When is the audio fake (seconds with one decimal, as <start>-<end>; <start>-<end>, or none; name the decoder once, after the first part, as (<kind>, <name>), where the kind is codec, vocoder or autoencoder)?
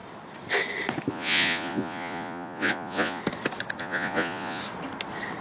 1.1-3.2 (vocoder, Vocos); 3.8-4.6